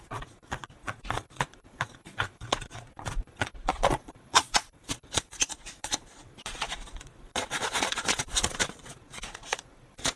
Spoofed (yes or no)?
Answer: yes